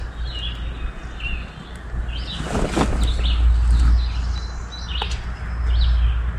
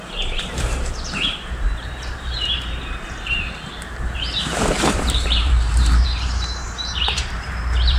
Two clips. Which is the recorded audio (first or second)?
first